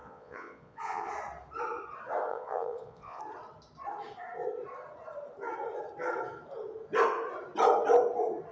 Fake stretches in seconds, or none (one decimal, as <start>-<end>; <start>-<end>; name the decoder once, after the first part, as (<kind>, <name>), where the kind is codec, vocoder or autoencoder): 0.0-1.1 (vocoder, Vocos); 2.3-3.2